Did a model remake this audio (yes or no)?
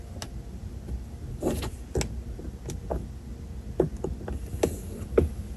no